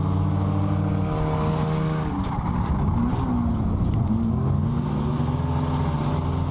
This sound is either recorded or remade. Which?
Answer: recorded